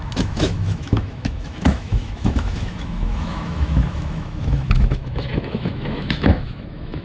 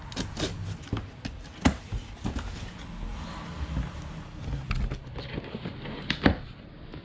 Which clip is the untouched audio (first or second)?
second